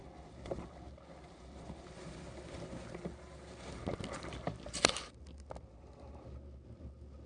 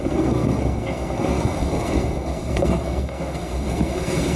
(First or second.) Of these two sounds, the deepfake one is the second